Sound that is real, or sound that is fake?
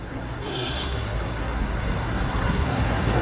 fake